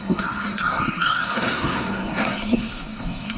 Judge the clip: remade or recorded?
remade